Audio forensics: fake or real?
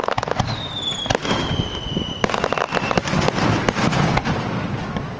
real